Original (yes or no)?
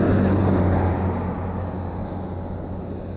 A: yes